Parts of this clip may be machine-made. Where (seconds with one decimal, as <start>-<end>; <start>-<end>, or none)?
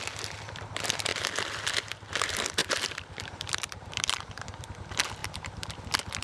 2.6-4.4; 5.2-5.8